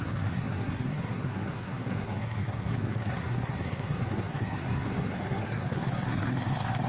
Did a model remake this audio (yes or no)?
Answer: yes